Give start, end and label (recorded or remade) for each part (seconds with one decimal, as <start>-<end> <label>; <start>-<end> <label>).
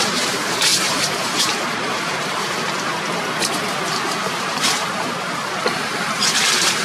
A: 0.0-2.9 remade; 2.9-4.4 recorded; 4.4-6.8 remade